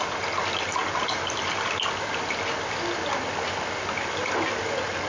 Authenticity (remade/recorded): recorded